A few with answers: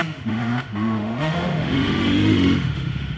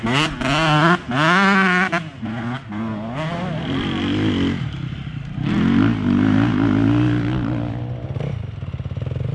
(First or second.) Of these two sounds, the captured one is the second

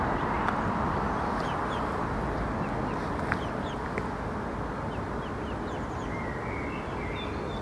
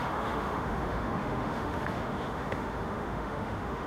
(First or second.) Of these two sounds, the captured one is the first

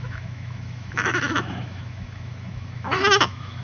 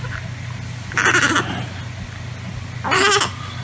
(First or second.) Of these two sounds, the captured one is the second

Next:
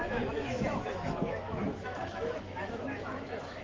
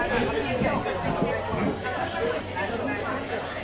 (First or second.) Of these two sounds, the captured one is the second